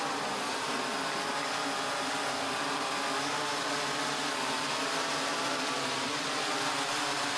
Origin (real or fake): real